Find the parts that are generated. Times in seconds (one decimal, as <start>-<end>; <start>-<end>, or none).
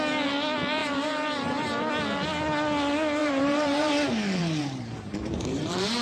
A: 0.8-1.9; 3.2-3.9; 4.4-6.0